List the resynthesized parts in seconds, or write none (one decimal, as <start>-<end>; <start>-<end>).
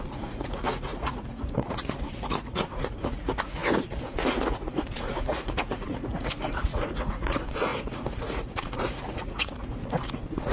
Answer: 0.0-10.5